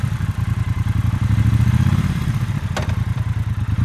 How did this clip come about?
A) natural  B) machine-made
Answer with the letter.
B